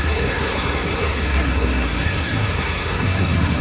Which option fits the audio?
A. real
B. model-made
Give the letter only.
B